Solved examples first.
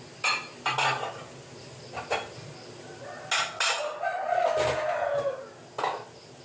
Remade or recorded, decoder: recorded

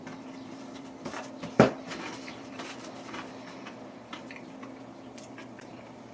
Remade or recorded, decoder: remade, vocoder, BigVGAN v2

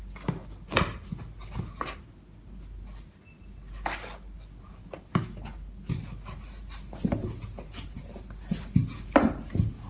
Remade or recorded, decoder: recorded